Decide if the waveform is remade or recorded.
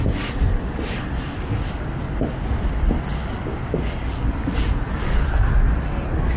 recorded